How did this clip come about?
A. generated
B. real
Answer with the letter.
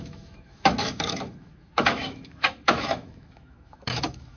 A